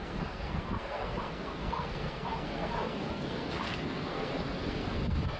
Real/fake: fake